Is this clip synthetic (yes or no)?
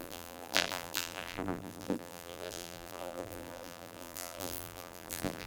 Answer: yes